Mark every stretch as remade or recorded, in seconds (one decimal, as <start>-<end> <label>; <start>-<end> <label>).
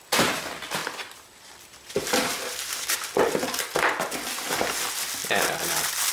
0.0-0.8 recorded; 0.8-1.6 remade; 1.6-5.2 recorded; 5.2-6.1 remade